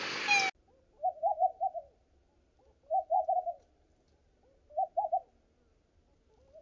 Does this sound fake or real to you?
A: real